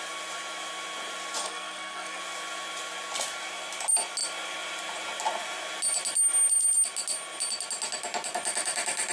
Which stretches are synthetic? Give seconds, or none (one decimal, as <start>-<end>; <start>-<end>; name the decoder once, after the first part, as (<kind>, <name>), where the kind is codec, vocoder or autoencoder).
1.4-2.2 (codec, SNAC)